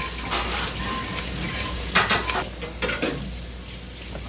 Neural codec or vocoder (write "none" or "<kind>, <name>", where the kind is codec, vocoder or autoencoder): none